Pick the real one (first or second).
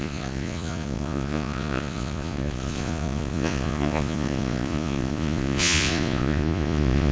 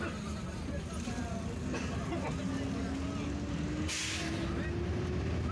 second